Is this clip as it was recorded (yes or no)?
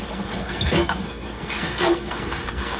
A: no